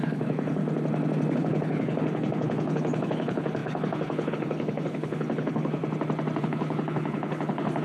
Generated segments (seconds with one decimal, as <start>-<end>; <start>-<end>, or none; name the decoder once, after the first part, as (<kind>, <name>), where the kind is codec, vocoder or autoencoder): 0.0-0.6 (codec, HILCodec); 1.3-5.8; 6.4-7.8